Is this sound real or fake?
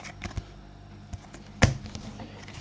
real